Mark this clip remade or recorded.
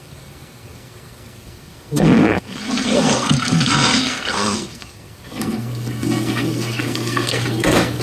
remade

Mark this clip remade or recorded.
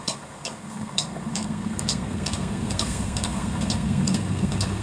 remade